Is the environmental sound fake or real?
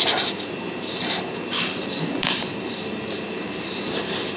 fake